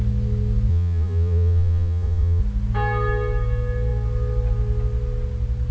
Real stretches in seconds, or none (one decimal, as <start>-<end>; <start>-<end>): 0.0-0.7; 2.4-5.7